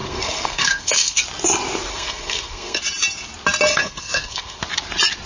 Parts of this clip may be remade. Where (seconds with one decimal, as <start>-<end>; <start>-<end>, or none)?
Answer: 0.0-1.2; 1.9-2.8; 3.7-4.6